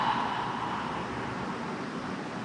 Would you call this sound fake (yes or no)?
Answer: no